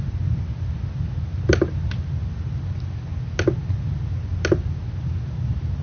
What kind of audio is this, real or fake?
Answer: real